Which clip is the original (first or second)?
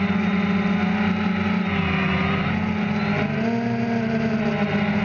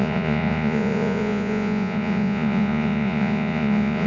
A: first